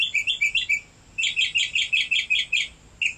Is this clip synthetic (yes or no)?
no